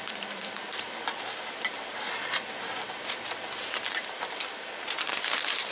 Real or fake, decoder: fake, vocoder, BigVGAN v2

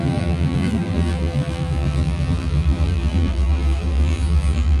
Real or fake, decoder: fake, vocoder, BigVGAN v2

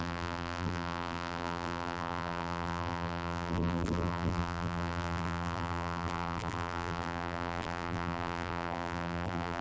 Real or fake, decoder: fake, vocoder, BigVGAN v2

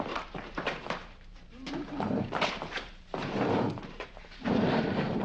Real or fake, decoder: fake, vocoder, BigVGAN v2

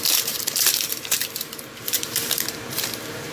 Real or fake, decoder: fake, vocoder, BigVGAN v2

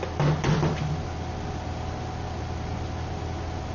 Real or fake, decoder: real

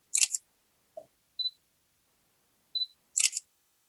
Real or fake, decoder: real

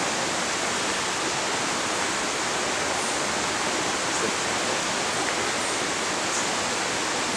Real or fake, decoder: real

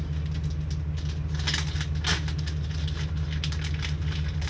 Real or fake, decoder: real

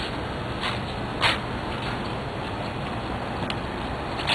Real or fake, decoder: real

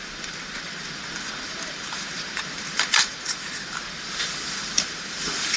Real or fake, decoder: fake, vocoder, BigVGAN v2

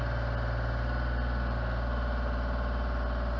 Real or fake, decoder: real